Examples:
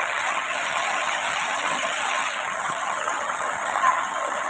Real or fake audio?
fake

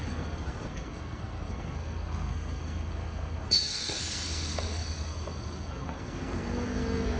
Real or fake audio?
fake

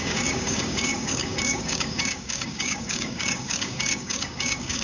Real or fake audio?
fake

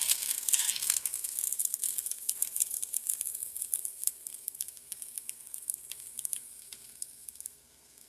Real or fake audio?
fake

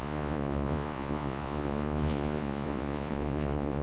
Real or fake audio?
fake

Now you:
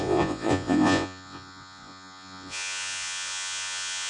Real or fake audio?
fake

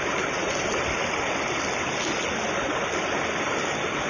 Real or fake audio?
real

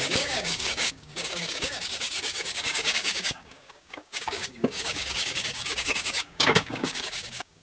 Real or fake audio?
fake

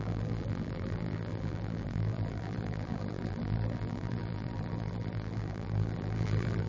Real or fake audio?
fake